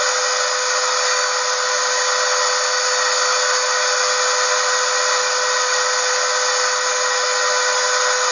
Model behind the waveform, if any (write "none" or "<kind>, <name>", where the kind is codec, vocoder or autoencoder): none